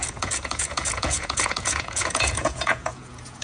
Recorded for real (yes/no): no